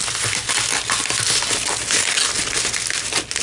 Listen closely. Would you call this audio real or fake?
real